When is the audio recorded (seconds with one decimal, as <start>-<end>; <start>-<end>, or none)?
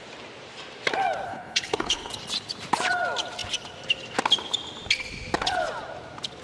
0.0-1.3; 2.1-6.4